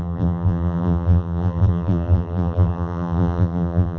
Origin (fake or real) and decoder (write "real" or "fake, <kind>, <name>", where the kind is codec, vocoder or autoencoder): fake, vocoder, BigVGAN v2